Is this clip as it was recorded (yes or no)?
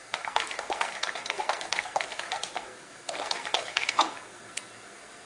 no